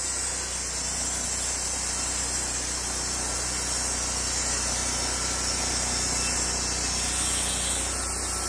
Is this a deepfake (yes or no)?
no